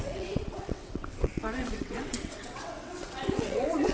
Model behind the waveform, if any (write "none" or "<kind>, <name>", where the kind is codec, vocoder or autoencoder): vocoder, WaveNeXt